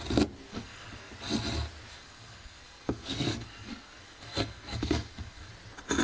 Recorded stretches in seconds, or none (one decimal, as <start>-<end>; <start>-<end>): 0.0-0.5; 1.1-1.9; 5.5-6.0